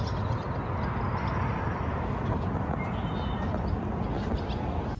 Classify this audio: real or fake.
real